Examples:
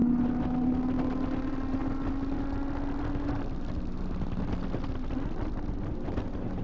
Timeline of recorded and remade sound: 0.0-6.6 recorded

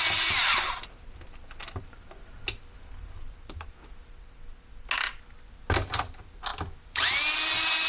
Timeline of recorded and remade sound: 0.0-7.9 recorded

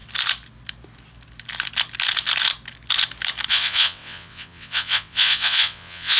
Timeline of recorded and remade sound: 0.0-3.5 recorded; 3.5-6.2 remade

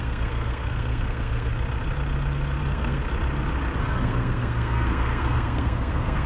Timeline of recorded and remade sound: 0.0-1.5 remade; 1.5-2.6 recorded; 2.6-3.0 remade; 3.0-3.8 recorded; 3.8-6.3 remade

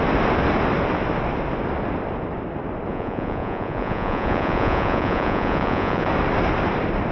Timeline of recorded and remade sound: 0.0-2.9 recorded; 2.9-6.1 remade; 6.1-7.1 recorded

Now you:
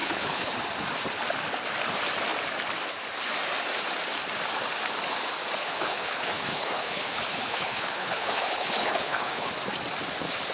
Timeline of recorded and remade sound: 0.0-0.5 remade; 0.5-5.6 recorded; 5.6-9.5 remade; 9.5-10.5 recorded